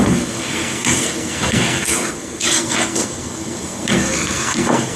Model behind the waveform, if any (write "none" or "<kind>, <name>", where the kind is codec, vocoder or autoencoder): codec, SNAC